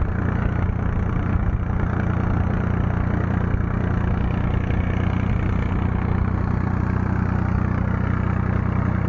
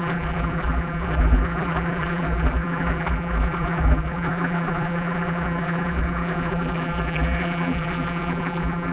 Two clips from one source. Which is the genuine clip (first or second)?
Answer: first